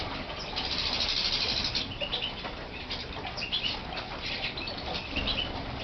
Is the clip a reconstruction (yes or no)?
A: no